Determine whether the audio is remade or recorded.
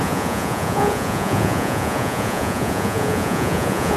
remade